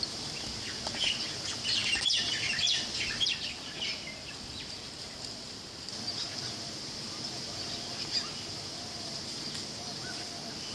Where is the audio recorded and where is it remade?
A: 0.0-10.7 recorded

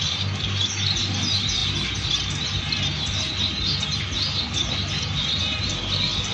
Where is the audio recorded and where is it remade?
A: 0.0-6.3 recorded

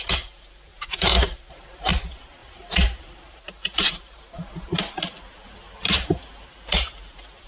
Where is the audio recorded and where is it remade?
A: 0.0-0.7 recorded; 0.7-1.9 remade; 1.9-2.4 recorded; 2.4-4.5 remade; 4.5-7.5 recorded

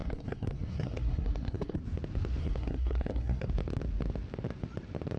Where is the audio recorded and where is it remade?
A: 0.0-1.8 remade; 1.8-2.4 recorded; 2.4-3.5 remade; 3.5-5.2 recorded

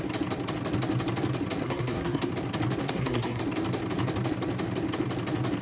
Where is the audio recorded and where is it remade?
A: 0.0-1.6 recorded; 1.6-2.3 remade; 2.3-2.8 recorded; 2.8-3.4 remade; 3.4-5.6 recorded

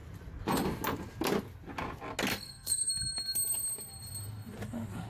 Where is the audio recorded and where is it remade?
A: 0.0-2.3 recorded; 2.3-2.9 remade; 2.9-5.1 recorded